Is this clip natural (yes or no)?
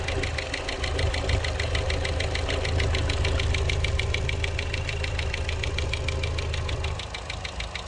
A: yes